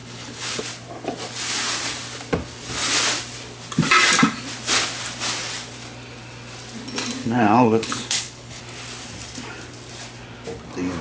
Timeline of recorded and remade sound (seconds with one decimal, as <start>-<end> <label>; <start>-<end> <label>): 0.0-0.6 remade; 0.6-7.2 recorded; 7.2-8.6 remade; 8.6-11.0 recorded